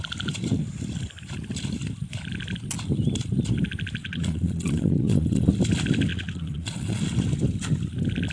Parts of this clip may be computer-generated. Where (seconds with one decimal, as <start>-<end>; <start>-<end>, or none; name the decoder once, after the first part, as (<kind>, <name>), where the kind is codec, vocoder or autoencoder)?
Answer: 4.0-5.5 (vocoder, Vocos); 6.1-7.0